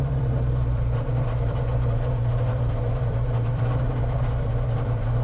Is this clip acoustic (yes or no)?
no